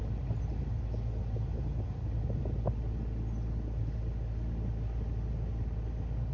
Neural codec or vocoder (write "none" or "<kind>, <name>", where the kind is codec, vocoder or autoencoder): none